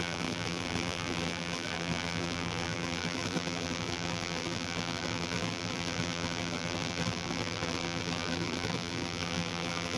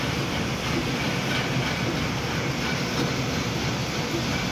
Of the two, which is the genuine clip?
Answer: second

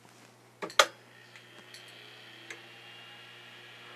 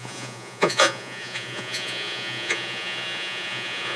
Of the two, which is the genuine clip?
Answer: first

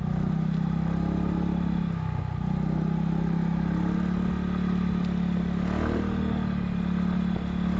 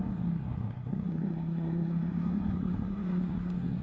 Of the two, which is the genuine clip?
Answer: first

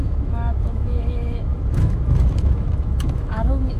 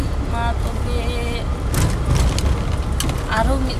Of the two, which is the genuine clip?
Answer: second